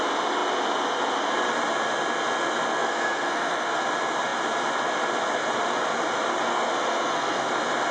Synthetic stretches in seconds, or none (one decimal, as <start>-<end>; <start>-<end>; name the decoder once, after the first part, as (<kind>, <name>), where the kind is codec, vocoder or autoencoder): 2.7-3.8 (codec, SNAC); 6.5-7.5